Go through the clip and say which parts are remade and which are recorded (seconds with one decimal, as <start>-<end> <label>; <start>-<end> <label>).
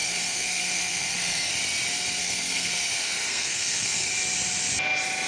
0.0-1.5 remade; 1.5-2.2 recorded; 2.2-2.7 remade; 2.7-3.3 recorded; 3.3-4.1 remade; 4.1-5.3 recorded